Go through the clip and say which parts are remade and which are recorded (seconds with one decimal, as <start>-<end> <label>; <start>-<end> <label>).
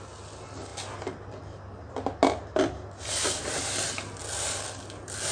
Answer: 0.0-5.3 recorded